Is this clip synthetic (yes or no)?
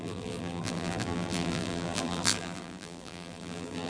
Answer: yes